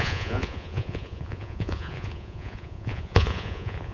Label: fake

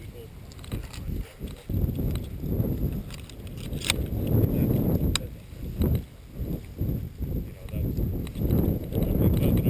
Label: real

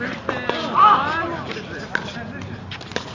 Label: real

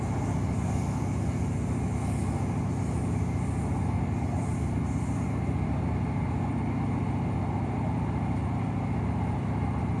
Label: real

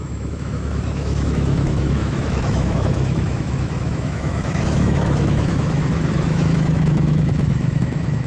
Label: fake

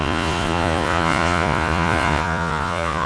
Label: fake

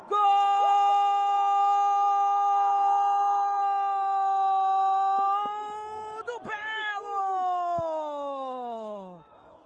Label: fake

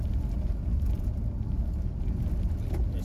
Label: real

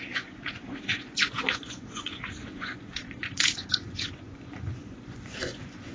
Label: fake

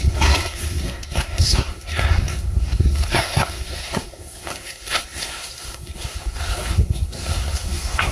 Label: fake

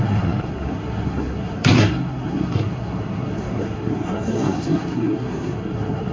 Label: fake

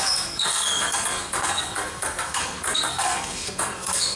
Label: fake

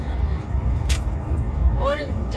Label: fake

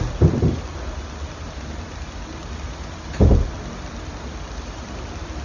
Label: real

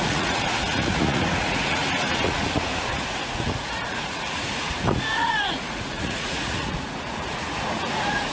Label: fake